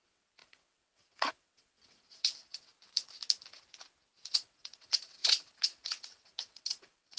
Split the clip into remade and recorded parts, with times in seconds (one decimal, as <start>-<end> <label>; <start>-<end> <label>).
0.0-2.7 remade; 2.7-4.3 recorded; 4.3-7.2 remade